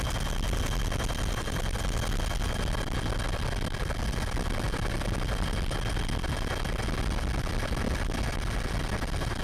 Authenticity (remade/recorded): recorded